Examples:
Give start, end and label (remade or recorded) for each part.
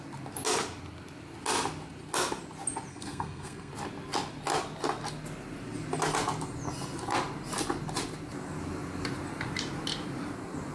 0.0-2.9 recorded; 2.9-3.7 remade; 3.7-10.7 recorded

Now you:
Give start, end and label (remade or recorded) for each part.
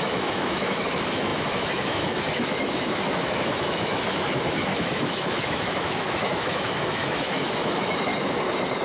0.0-8.1 remade; 8.1-8.8 recorded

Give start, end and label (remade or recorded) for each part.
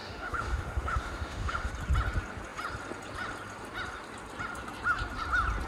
0.0-1.7 remade; 1.7-5.7 recorded